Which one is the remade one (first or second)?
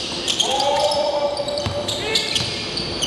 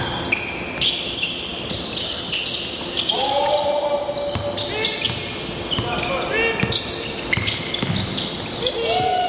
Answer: first